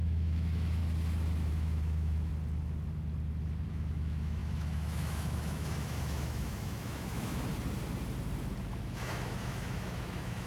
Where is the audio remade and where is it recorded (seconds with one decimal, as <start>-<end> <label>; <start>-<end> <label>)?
0.0-0.8 remade; 0.8-1.5 recorded; 1.5-2.3 remade; 2.3-3.7 recorded; 3.7-7.5 remade; 7.5-8.6 recorded; 8.6-10.5 remade